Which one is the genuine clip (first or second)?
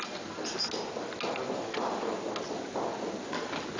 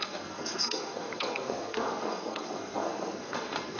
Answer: first